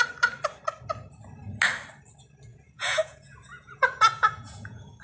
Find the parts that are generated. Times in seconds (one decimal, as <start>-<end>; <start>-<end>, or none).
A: 2.5-5.0